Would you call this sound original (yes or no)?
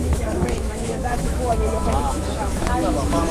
no